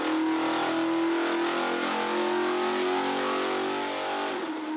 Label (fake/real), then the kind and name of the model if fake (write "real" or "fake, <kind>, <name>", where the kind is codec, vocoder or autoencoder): real